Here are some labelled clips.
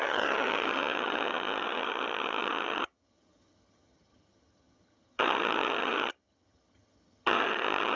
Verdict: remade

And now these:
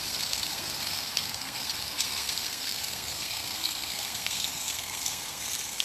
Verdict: remade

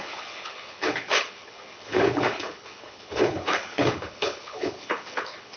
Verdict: remade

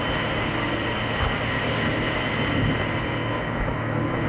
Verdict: recorded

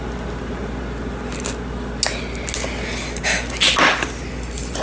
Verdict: recorded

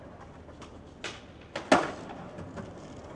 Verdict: recorded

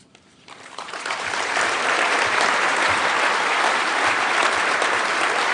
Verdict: remade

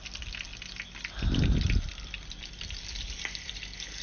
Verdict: recorded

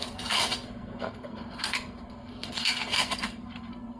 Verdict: remade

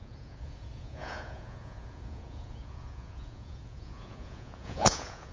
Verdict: remade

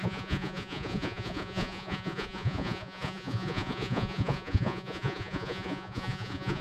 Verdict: remade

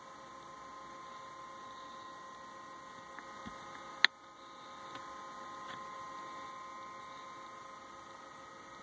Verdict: recorded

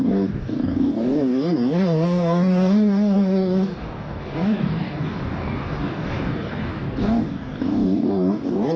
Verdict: remade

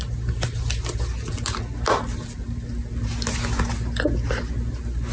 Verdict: recorded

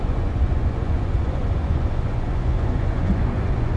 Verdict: remade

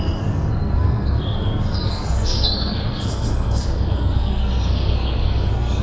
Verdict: remade